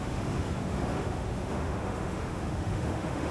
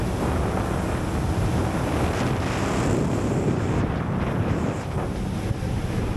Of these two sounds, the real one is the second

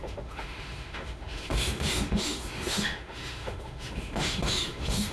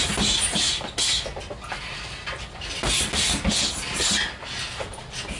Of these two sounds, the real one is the second